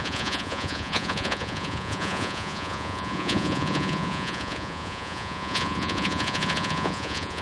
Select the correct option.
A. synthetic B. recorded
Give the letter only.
A